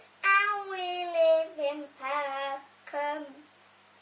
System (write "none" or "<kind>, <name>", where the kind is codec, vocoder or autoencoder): none